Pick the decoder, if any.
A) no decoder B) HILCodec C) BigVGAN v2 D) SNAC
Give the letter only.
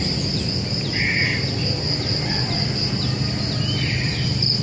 A